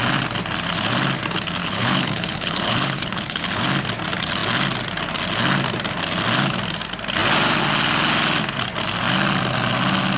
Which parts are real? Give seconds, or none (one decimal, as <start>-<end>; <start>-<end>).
0.0-1.6; 3.6-10.2